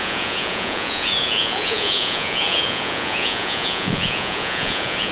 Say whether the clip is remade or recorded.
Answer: remade